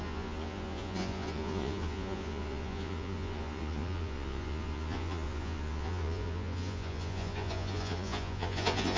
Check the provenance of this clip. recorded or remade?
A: remade